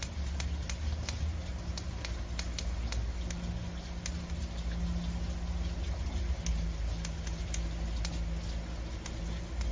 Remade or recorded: recorded